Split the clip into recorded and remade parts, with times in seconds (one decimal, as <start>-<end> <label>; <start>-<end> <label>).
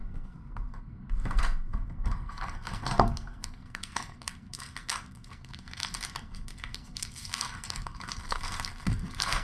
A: 0.0-9.4 remade